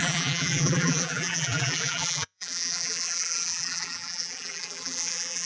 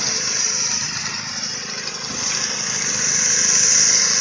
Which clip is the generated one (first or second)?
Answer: first